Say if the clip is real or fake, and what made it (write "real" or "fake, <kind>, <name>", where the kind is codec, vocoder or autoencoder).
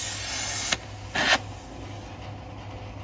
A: real